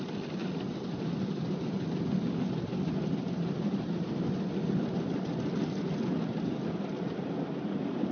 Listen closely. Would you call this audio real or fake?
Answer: real